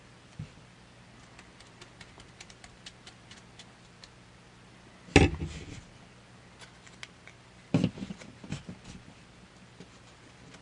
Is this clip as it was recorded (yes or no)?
yes